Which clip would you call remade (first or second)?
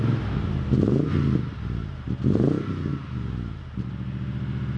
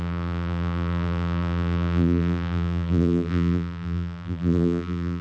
second